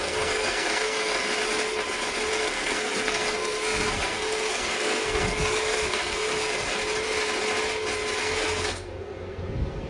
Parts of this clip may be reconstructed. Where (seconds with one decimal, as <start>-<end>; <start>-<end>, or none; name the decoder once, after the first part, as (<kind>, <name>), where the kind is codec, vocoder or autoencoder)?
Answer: 0.0-1.3 (codec, SNAC); 2.3-6.8; 8.2-9.9